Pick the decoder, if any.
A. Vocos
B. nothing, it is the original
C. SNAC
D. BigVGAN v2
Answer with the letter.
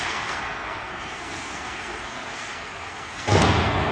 C